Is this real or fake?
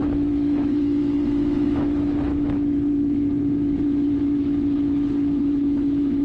fake